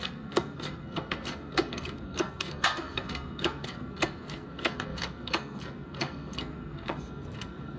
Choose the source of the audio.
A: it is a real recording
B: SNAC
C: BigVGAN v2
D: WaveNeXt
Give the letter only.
B